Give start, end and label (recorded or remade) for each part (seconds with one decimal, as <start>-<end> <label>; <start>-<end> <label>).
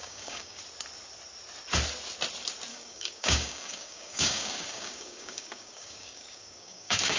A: 0.0-0.6 remade; 0.6-2.7 recorded; 2.7-7.2 remade